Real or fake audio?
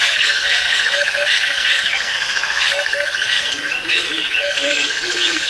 fake